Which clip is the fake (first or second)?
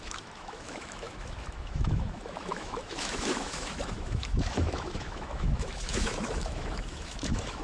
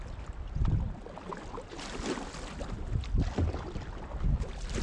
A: first